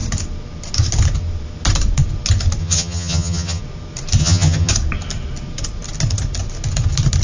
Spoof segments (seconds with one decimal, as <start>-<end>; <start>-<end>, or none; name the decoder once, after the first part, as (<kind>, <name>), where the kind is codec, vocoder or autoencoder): 2.6-3.6 (vocoder, HiFi-GAN); 4.2-4.7